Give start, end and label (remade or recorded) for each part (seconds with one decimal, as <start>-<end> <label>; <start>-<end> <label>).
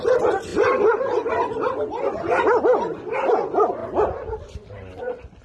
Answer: 0.0-5.4 recorded